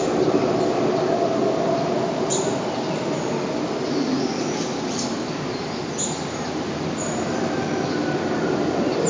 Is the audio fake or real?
real